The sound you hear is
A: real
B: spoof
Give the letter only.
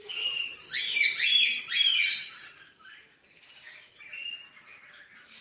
B